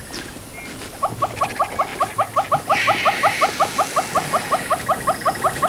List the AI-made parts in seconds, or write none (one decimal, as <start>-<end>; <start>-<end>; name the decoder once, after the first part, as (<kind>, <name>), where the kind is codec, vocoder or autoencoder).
none